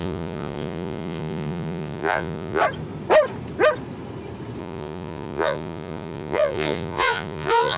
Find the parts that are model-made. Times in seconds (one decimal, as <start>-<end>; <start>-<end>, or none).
0.0-2.6; 4.6-7.8